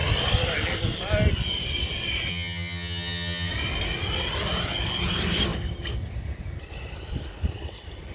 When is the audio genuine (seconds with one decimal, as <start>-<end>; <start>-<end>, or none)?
0.0-2.3; 3.5-8.1